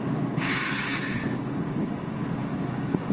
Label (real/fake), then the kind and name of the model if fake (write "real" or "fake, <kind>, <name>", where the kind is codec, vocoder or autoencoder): fake, codec, DAC